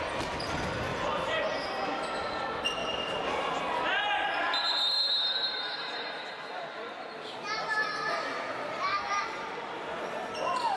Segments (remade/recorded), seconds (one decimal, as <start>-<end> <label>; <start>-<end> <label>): 0.0-0.9 recorded; 0.9-2.4 remade; 2.4-2.8 recorded; 2.8-3.6 remade; 3.6-10.8 recorded